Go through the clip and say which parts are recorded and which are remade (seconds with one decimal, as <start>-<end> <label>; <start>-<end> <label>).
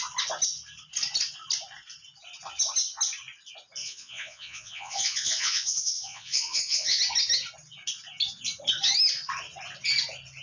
0.0-3.8 recorded; 3.8-7.0 remade; 7.0-10.4 recorded